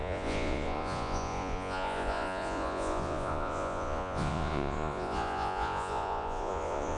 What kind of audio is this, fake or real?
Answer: fake